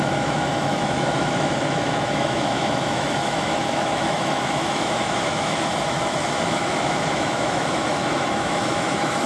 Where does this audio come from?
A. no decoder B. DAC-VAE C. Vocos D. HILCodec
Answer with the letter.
B